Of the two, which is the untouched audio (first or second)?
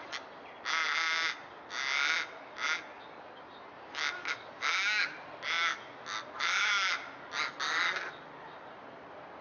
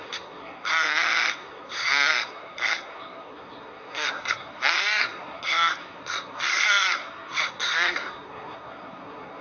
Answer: first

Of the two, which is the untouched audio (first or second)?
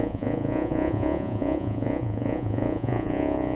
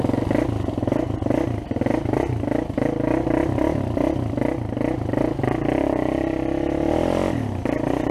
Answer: second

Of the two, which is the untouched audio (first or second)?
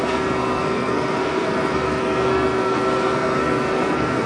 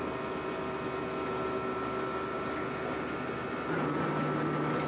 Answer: second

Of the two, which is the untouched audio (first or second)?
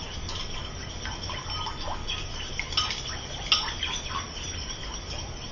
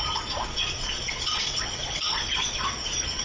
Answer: first